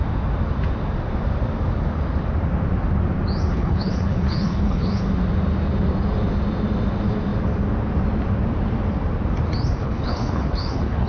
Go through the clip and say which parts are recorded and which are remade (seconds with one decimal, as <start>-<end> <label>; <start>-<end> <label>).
0.0-3.5 recorded; 3.5-5.0 remade; 5.0-9.8 recorded; 9.8-11.1 remade